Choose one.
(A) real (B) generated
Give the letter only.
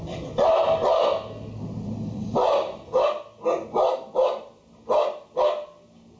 A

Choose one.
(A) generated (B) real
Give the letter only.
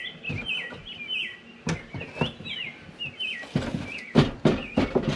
B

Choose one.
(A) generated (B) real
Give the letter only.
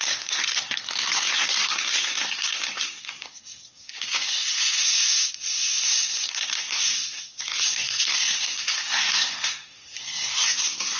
A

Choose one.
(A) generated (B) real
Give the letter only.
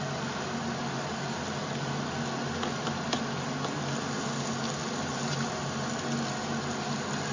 B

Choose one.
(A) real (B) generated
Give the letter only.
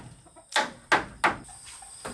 A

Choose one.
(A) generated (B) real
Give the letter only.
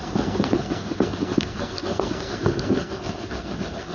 A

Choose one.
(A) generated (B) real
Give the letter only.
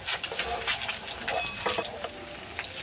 B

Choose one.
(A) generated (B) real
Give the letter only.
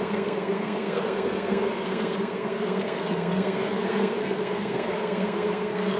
A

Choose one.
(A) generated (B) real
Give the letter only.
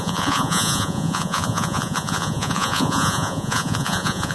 A